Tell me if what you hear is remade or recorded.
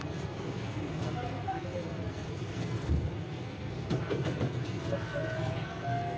remade